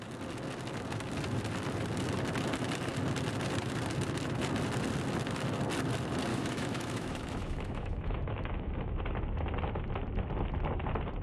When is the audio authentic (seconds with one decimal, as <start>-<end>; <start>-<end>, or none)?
0.0-6.3; 9.0-11.2